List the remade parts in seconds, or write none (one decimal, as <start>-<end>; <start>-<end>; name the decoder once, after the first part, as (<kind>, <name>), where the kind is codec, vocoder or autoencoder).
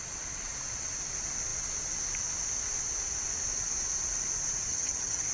4.7-5.3 (vocoder, HiFi-GAN)